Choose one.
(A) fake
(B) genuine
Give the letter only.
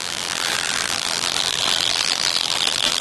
A